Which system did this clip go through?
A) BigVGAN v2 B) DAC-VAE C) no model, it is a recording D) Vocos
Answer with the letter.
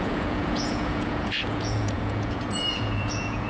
D